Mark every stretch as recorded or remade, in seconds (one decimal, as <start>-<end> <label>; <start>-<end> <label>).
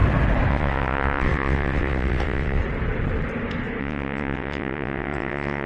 0.0-0.5 recorded; 0.5-2.6 remade; 2.6-3.8 recorded; 3.8-5.7 remade